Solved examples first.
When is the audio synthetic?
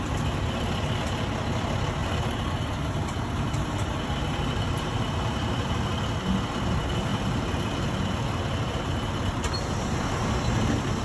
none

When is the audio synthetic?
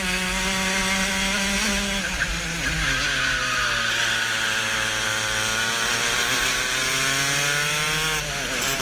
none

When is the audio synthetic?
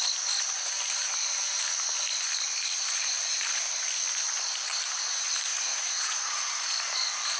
5.5-6.5 (vocoder, Vocos)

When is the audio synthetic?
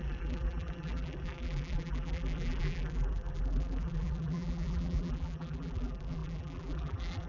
0.0-7.3 (vocoder, BigVGAN v2)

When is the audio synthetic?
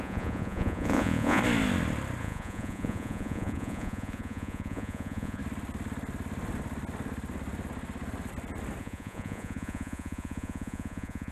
0.0-1.4 (vocoder, Vocos); 2.2-5.4; 8.8-11.3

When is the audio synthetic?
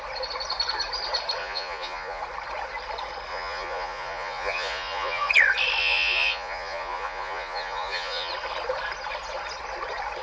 1.4-2.2 (vocoder, Vocos); 3.3-5.3; 5.8-8.3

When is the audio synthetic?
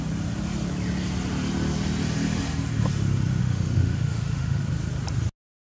3.4-4.6 (autoencoder, DAC-VAE)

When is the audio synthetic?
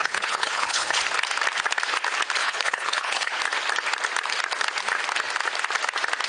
0.0-1.0 (codec, HILCodec); 2.4-3.4